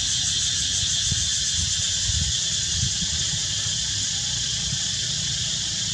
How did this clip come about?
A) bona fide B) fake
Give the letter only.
A